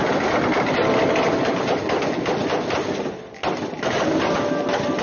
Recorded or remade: recorded